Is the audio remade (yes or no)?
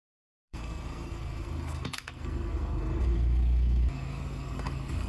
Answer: yes